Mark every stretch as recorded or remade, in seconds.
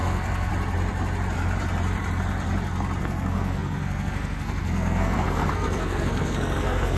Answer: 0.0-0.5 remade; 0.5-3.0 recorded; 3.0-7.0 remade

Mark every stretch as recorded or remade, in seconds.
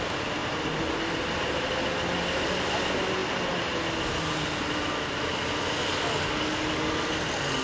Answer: 0.0-0.4 recorded; 0.4-0.9 remade; 0.9-7.6 recorded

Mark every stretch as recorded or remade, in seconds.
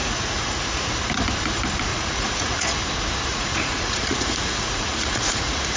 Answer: 0.0-0.9 remade; 0.9-1.9 recorded; 1.9-2.7 remade; 2.7-3.3 recorded; 3.3-5.8 remade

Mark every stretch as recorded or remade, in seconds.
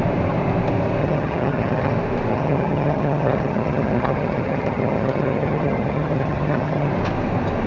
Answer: 0.0-1.0 recorded; 1.0-1.9 remade; 1.9-2.3 recorded; 2.3-6.9 remade; 6.9-7.7 recorded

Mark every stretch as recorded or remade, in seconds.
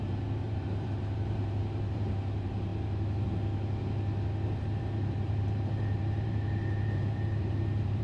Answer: 0.0-2.7 remade; 2.7-4.6 recorded; 4.6-8.0 remade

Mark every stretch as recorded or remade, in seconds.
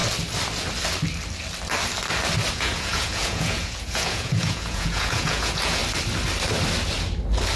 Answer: 0.0-2.5 recorded; 2.5-5.8 remade; 5.8-7.6 recorded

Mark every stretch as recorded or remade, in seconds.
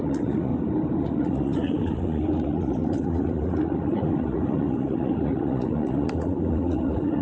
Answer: 0.0-0.5 remade; 0.5-1.0 recorded; 1.0-7.2 remade